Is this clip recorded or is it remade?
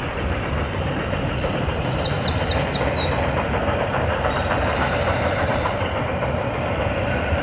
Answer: remade